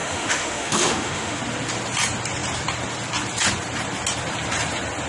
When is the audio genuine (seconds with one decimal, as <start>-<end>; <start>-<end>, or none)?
1.4-5.1